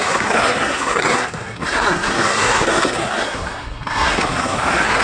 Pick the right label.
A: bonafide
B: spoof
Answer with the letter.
B